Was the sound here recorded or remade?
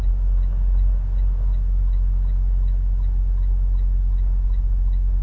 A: recorded